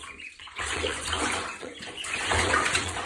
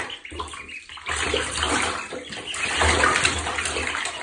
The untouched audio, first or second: second